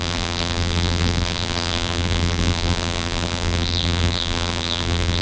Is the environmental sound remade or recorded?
remade